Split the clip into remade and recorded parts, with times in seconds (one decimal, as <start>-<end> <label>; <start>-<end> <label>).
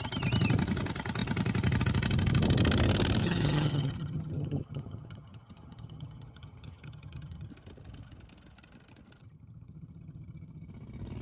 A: 0.0-3.2 recorded; 3.2-7.5 remade; 7.5-9.2 recorded; 9.2-10.7 remade; 10.7-11.2 recorded